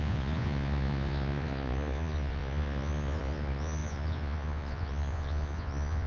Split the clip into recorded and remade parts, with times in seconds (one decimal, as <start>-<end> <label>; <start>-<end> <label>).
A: 0.0-6.1 remade